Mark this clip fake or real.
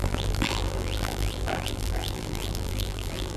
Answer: fake